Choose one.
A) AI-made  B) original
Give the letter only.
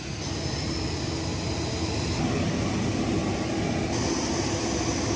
B